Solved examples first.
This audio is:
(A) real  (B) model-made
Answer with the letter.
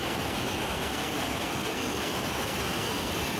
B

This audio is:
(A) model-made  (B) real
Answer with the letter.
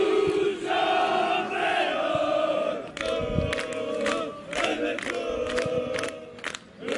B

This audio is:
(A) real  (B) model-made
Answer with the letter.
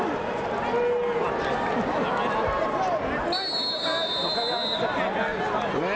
A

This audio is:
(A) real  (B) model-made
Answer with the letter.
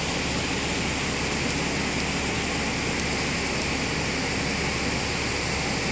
A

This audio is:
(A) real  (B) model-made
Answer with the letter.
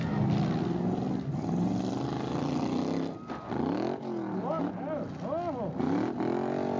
A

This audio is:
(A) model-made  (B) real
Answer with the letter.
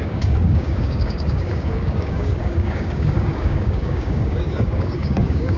A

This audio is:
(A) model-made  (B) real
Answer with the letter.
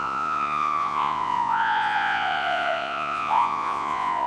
A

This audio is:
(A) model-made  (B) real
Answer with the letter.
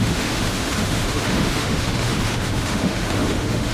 A